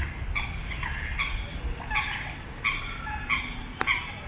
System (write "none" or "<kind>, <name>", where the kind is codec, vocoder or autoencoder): none